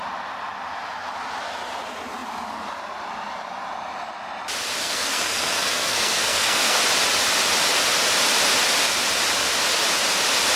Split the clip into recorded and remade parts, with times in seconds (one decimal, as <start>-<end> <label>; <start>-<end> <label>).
0.0-4.8 recorded; 4.8-6.8 remade; 6.8-10.5 recorded